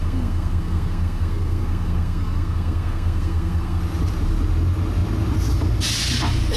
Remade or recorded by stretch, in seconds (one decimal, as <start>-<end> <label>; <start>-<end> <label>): 0.0-3.8 remade; 3.8-6.6 recorded